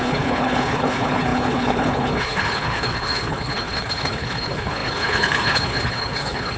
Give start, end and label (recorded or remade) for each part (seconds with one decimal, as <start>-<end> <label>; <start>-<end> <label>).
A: 0.0-6.6 remade